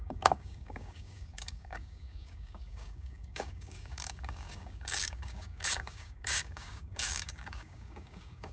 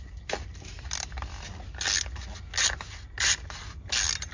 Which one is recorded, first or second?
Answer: second